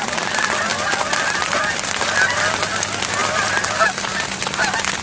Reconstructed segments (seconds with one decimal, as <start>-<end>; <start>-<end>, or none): none